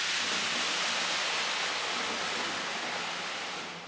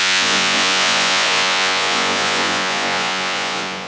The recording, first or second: first